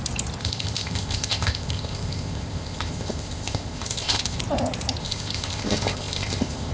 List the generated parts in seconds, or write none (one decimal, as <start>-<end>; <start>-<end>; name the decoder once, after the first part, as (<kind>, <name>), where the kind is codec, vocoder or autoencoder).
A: 0.4-4.4 (codec, ZipCodec); 5.0-6.7